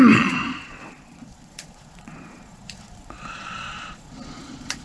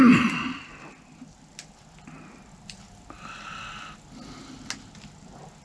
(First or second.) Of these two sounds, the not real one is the first